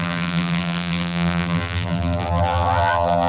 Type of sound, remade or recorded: remade